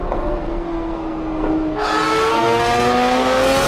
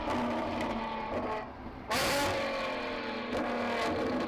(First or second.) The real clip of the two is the second